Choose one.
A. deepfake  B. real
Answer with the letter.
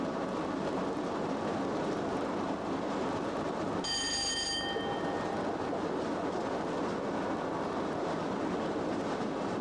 B